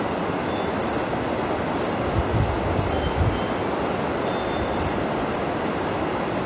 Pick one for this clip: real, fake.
real